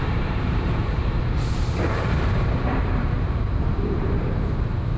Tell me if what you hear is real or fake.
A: fake